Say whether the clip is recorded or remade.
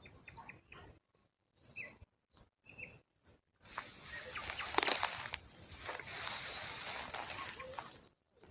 recorded